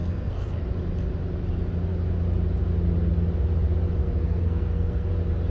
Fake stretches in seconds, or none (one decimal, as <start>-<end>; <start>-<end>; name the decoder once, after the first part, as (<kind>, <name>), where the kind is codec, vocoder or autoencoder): 0.0-0.6 (codec, SNAC); 4.0-5.1